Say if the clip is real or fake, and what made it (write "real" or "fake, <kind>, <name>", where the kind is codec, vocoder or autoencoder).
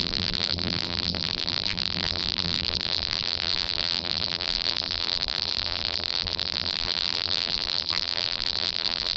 fake, vocoder, BigVGAN v2